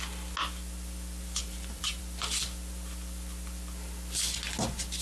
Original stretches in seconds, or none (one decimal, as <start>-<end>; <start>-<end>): 0.0-1.4; 2.0-5.0